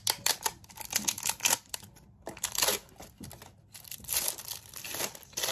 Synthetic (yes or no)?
no